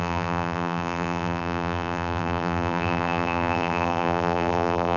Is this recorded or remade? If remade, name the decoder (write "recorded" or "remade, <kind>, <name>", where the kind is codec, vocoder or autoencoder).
remade, vocoder, BigVGAN v2